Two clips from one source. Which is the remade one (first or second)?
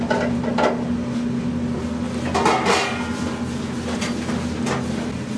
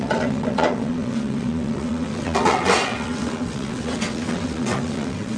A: second